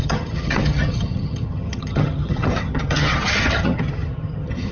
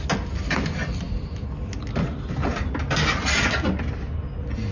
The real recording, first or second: second